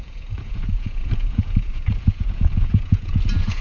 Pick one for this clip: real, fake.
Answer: fake